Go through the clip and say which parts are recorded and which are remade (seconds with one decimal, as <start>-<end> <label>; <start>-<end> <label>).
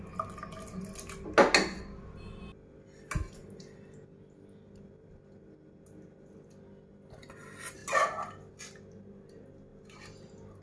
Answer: 0.0-10.6 recorded